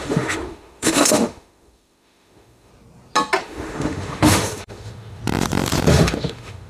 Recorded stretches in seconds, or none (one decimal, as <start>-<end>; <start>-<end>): 2.7-3.4; 5.2-5.9